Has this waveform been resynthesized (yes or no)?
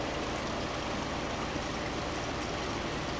no